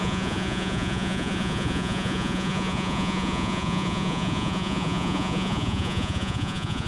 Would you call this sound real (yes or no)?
no